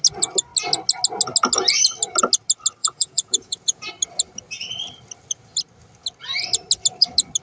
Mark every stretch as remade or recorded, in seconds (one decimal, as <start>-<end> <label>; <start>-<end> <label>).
0.0-2.8 recorded; 2.8-3.9 remade; 3.9-7.4 recorded